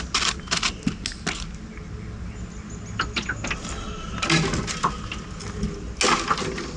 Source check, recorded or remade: recorded